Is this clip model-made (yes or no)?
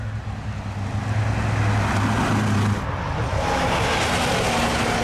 no